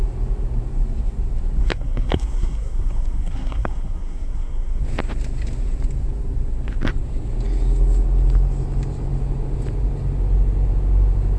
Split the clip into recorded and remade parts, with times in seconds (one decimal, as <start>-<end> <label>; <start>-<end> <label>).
0.0-1.6 recorded; 1.6-4.8 remade; 4.8-11.4 recorded